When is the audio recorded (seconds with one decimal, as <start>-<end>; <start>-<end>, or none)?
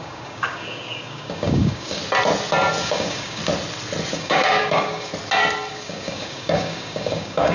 2.0-2.8; 3.4-4.1; 5.1-5.7